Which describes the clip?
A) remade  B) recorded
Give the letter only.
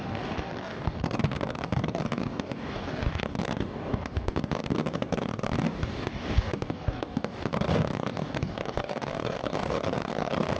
A